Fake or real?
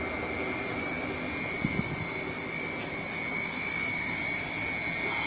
real